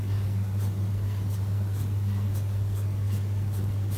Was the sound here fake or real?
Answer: fake